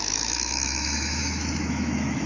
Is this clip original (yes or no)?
no